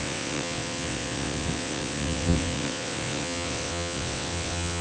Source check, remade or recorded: remade